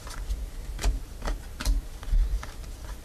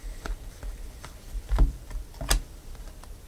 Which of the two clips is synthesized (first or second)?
second